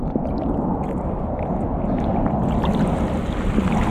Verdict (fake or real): real